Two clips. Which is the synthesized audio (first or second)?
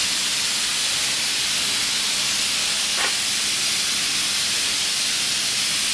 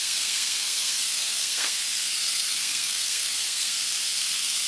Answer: second